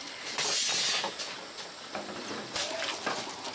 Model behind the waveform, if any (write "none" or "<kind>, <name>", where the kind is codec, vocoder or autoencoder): none